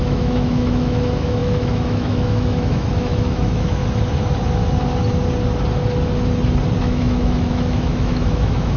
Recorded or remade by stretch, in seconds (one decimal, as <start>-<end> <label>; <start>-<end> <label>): 0.0-3.8 remade; 3.8-6.8 recorded; 6.8-8.8 remade